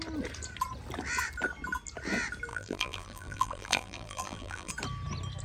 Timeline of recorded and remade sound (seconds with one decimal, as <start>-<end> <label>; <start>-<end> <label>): 0.0-2.5 recorded; 2.5-4.7 remade; 4.7-5.4 recorded